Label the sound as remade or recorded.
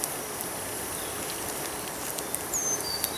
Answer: recorded